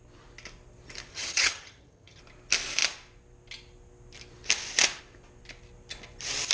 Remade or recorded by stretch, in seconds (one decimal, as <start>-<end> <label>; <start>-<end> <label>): 0.0-1.1 recorded; 1.1-2.2 remade; 2.2-6.5 recorded